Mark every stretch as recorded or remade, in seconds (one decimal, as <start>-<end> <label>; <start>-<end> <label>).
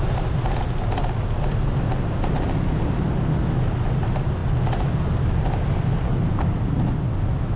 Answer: 0.0-7.6 recorded